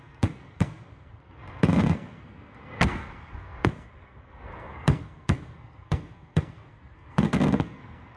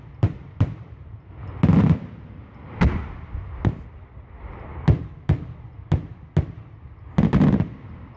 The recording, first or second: second